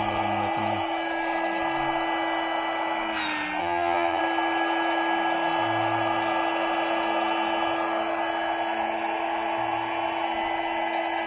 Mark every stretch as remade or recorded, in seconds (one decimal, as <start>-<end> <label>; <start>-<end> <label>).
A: 0.0-3.6 recorded; 3.6-4.2 remade; 4.2-11.3 recorded